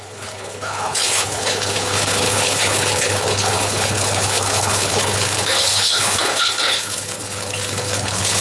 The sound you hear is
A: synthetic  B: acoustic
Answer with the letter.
A